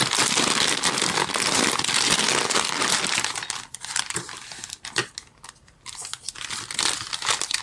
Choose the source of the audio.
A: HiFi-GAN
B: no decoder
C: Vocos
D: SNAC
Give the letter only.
B